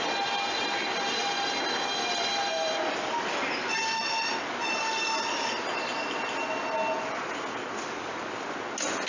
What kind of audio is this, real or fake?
real